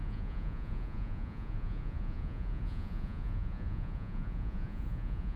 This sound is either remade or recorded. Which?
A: remade